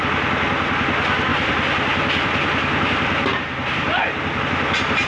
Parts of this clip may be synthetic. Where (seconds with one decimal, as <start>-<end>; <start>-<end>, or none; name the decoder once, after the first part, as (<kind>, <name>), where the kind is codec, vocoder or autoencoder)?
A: 1.3-4.4 (vocoder, BigVGAN v2)